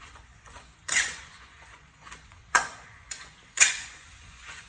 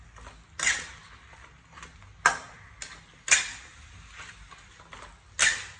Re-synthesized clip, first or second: first